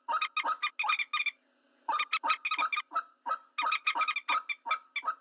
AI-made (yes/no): no